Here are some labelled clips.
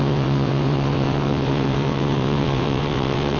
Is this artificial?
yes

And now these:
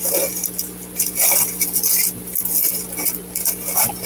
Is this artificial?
no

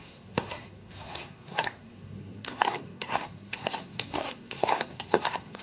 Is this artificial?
yes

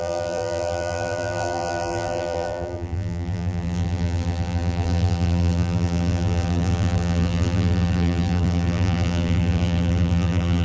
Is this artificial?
yes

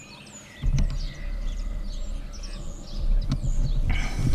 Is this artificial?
no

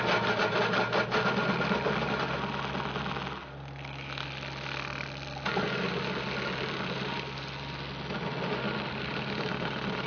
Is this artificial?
no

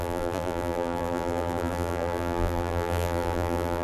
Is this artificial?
yes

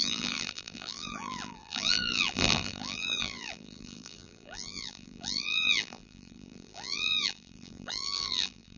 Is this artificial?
yes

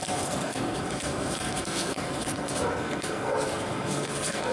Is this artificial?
yes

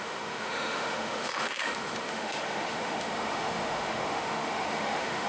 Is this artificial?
yes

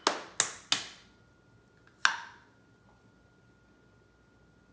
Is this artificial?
no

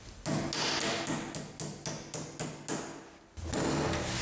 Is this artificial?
no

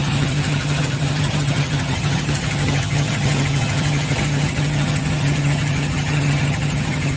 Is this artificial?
yes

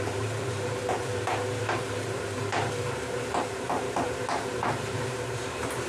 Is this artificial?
yes